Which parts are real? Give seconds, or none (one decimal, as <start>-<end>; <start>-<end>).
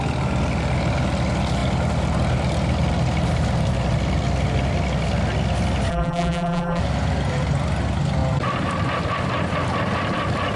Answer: 0.0-5.9; 6.8-10.6